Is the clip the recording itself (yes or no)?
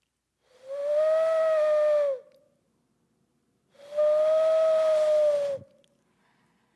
yes